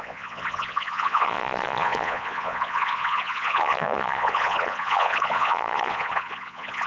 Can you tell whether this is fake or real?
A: fake